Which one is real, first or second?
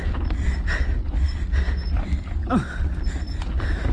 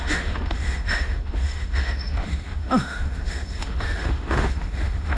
first